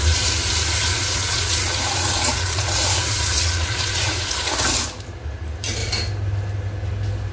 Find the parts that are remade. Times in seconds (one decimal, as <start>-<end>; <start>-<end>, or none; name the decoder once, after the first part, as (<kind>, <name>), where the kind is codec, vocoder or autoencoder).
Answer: 0.9-4.6 (vocoder, Vocos)